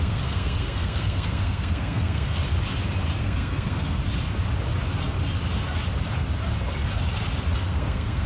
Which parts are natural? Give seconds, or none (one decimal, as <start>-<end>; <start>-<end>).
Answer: 2.4-3.2; 4.0-7.6